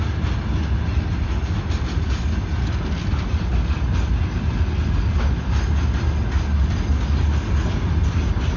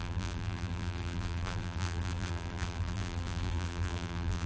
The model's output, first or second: second